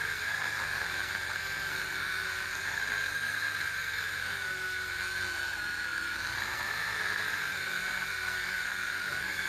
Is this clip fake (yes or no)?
yes